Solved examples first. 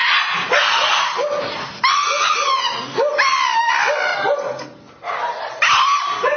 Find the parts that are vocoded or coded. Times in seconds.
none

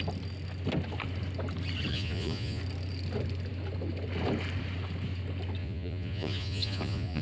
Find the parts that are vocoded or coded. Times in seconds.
1.9-2.6 (vocoder, Vocos); 5.6-7.2